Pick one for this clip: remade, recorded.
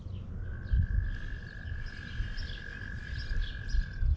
recorded